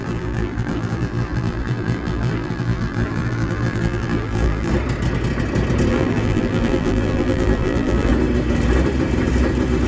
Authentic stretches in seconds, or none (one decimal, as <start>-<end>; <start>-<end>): 4.7-5.9; 8.1-9.9